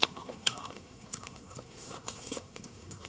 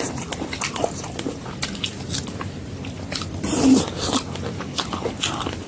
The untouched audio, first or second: second